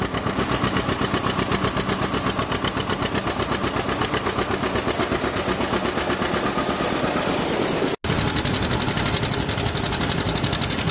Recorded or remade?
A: recorded